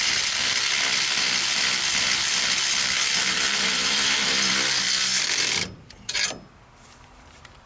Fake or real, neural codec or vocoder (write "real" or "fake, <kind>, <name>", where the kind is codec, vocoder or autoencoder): fake, vocoder, BigVGAN v2